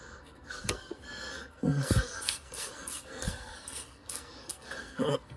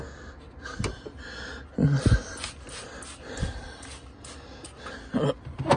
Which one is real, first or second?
second